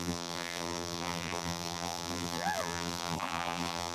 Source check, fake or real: fake